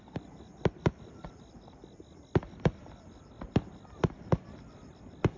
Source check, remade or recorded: recorded